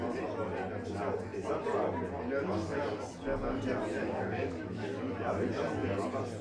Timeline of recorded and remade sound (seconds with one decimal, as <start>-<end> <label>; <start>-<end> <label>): 0.0-4.0 recorded; 4.0-5.1 remade; 5.1-6.4 recorded